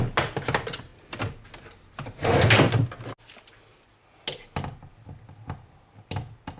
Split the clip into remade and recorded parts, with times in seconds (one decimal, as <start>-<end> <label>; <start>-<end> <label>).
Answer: 0.0-6.6 recorded